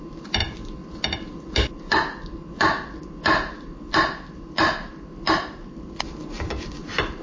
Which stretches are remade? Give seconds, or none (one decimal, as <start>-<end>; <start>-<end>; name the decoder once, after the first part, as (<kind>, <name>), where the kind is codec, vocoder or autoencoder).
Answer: none